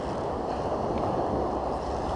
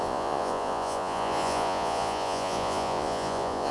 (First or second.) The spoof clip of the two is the second